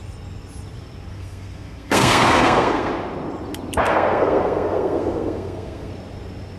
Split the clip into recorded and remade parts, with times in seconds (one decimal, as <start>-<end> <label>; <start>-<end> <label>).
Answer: 0.0-1.1 recorded; 1.1-2.9 remade; 2.9-3.9 recorded; 3.9-5.9 remade; 5.9-6.6 recorded